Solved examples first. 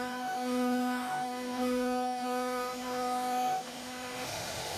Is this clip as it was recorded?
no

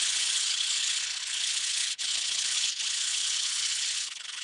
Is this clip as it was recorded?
no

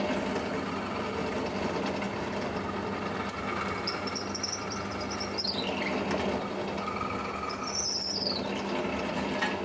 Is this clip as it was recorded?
yes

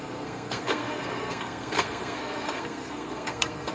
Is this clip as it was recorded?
no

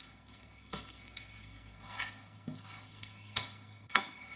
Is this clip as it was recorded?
no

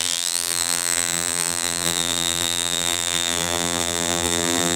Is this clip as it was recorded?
no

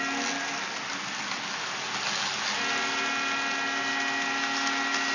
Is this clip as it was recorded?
yes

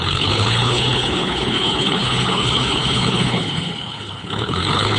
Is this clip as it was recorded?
no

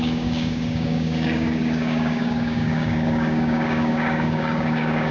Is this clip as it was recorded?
no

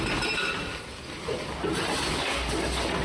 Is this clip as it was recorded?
yes